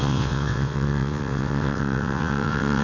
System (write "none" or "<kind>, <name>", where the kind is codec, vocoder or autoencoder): vocoder, WaveNeXt